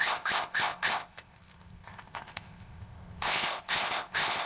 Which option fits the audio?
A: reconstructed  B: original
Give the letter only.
A